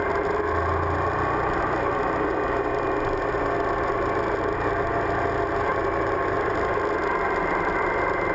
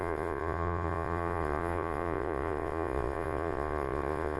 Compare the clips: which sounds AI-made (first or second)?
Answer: second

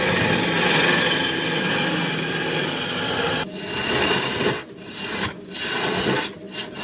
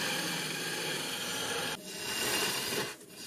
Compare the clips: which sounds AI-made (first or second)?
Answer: second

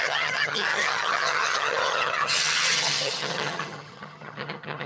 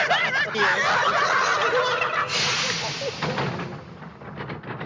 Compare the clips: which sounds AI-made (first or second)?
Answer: first